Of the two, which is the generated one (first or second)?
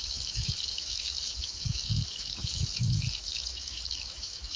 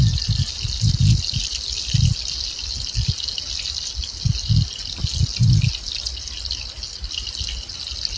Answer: first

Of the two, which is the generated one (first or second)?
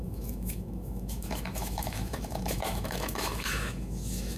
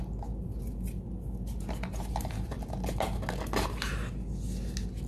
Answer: first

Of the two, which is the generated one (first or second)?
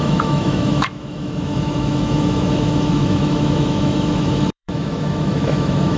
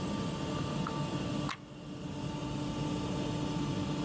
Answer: first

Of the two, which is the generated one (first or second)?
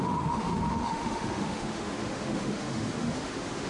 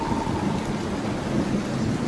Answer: first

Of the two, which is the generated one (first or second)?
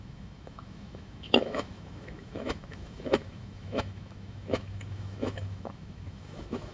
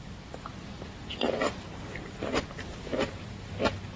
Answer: first